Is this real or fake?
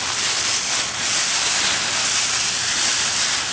real